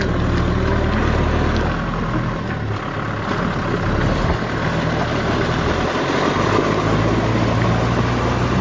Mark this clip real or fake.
real